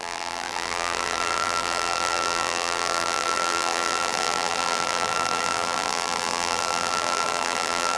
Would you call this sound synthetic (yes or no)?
yes